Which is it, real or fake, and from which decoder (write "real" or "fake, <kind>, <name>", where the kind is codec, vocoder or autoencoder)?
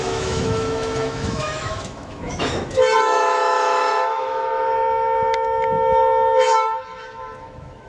fake, autoencoder, DAC-VAE